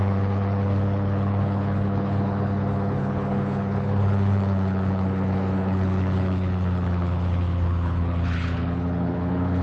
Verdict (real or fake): fake